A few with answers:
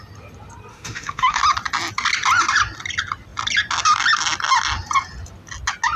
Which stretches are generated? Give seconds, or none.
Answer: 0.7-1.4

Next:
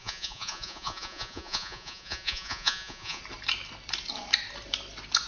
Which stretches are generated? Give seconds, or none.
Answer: 0.0-3.2